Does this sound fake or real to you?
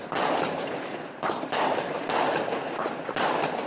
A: real